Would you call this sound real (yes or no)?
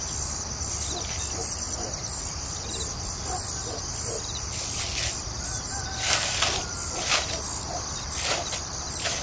no